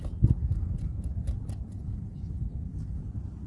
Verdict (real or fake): real